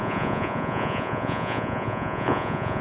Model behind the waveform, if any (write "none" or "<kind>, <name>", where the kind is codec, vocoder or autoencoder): vocoder, Vocos